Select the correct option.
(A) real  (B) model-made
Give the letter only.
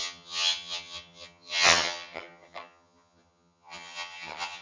B